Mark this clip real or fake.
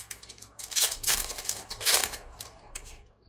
fake